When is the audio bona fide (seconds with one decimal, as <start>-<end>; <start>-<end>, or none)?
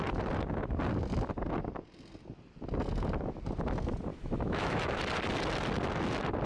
0.0-4.1; 5.0-6.5